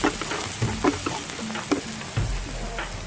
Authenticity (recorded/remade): recorded